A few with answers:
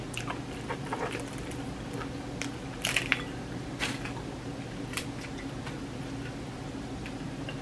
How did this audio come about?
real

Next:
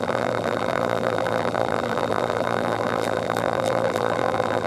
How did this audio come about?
fake